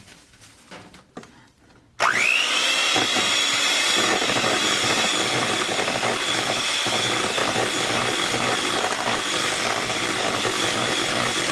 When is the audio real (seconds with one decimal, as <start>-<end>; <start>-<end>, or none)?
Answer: 0.0-11.5